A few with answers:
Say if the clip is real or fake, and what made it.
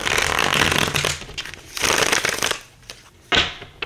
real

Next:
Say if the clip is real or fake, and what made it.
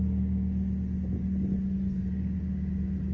real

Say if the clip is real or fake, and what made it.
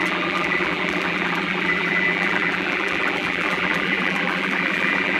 fake, vocoder, BigVGAN v2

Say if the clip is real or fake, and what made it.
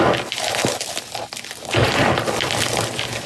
real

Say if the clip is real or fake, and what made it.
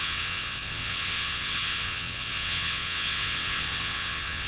fake, vocoder, WaveNeXt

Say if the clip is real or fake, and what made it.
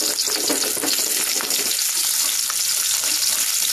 real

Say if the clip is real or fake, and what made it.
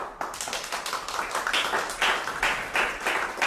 real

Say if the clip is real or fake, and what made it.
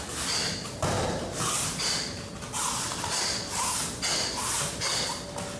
real